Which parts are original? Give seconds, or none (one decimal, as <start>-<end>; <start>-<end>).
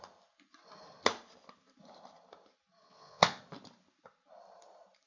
0.0-2.8; 3.4-5.1